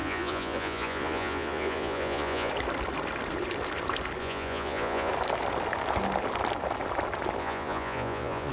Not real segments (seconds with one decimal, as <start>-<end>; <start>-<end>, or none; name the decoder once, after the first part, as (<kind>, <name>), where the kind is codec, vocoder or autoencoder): 0.0-2.5 (vocoder, Vocos); 4.2-5.1; 7.4-8.5